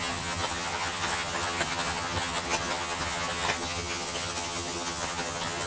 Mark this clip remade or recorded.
remade